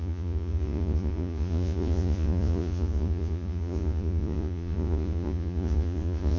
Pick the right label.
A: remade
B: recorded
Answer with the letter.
A